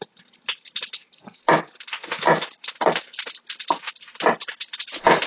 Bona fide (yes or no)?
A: yes